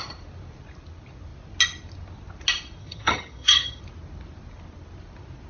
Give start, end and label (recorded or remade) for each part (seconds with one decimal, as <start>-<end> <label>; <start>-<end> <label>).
0.0-2.8 recorded; 2.8-3.8 remade; 3.8-5.5 recorded